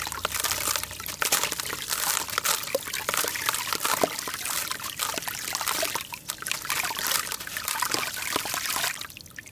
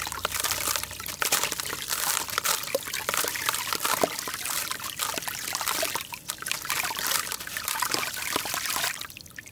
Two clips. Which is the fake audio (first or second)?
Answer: second